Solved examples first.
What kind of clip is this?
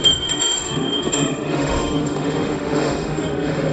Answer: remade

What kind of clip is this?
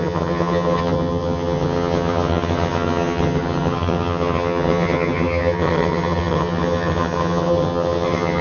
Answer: remade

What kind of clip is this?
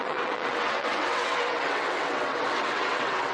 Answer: remade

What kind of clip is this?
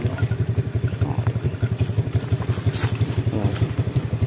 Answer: remade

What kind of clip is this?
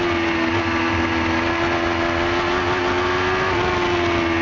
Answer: recorded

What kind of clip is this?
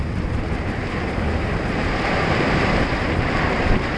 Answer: remade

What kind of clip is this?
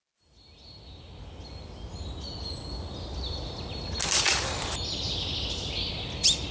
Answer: recorded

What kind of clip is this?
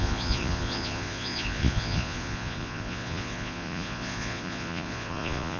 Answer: remade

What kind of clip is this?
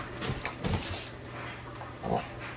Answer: recorded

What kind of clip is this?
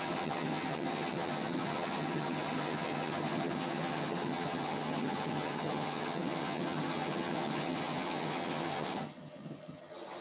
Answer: remade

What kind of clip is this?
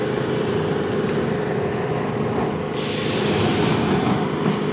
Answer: recorded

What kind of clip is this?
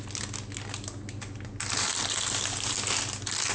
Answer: recorded